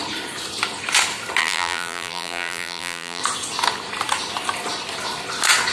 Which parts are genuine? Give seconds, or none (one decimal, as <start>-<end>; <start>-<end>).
0.0-1.4; 3.2-5.7